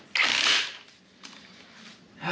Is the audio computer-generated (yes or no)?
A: no